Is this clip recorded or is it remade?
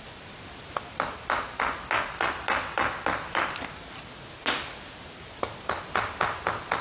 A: recorded